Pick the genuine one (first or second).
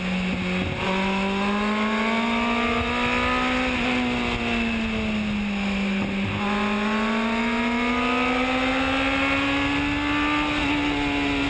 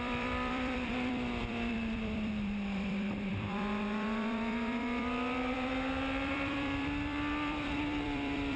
first